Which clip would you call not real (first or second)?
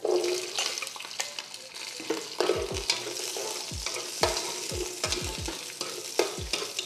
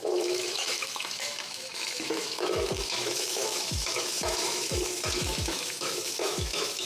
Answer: second